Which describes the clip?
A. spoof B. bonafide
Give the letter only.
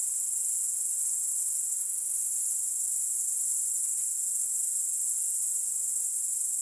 A